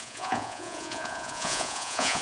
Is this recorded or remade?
remade